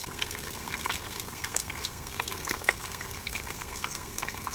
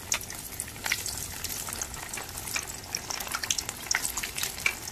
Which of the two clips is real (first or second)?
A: second